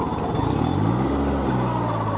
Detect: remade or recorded recorded